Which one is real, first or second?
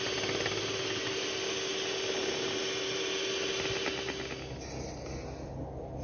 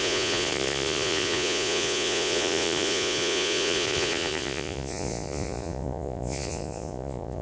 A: first